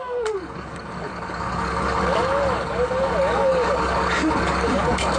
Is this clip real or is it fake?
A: fake